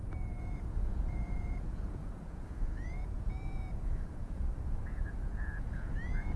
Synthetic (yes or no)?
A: yes